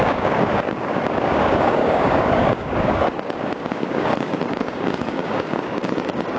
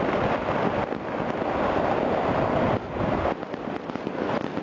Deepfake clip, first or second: first